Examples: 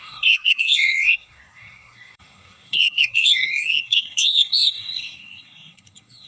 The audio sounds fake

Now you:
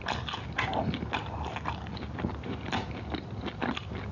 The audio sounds real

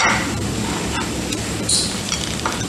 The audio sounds fake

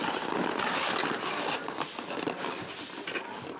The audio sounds real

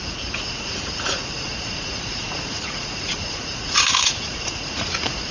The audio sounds fake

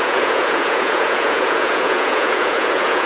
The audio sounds fake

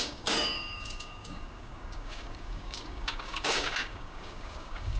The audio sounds fake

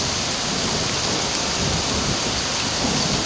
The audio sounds real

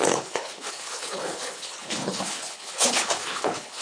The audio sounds fake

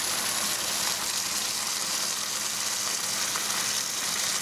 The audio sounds real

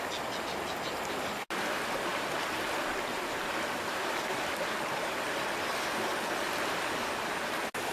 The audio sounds real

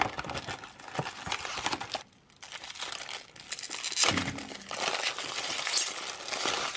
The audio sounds real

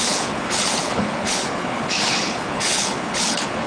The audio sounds fake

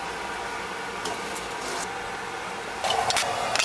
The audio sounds real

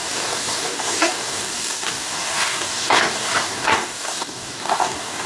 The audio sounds fake